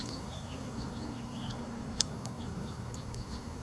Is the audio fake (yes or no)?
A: yes